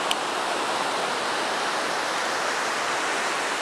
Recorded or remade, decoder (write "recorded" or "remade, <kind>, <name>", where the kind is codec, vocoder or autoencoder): recorded